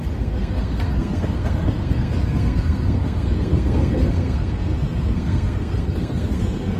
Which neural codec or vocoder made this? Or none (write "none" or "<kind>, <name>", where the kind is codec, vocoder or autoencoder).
codec, SNAC